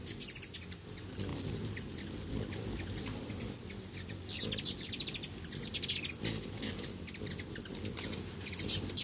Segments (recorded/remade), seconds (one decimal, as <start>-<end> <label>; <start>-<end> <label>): 0.0-9.0 recorded